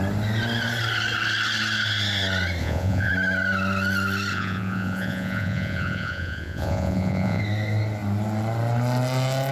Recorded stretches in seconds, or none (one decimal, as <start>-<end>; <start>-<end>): 0.0-2.6; 3.1-4.3; 7.4-9.5